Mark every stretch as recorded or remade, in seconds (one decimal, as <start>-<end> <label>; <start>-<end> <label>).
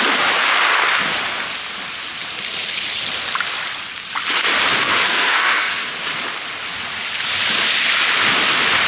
0.0-4.8 recorded; 4.8-5.9 remade; 5.9-8.9 recorded